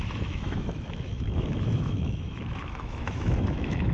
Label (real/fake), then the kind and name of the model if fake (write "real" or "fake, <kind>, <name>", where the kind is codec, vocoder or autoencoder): fake, autoencoder, DAC-VAE